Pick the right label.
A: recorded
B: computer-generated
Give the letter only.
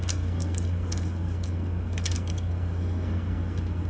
B